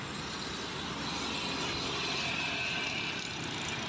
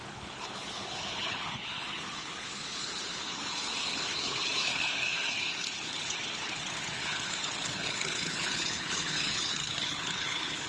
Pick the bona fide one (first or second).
first